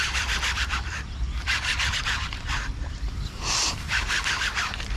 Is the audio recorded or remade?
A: remade